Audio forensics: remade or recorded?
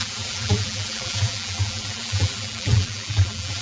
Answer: remade